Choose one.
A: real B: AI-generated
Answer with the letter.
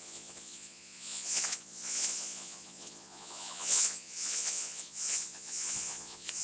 B